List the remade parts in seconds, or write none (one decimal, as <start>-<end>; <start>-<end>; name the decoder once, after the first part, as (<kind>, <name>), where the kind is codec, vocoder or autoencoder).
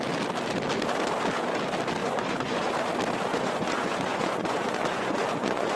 2.0-2.7 (vocoder, Vocos); 3.3-5.8